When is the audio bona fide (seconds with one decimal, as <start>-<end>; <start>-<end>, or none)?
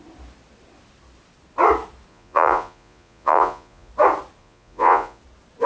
0.0-2.1; 3.9-4.4; 5.2-5.7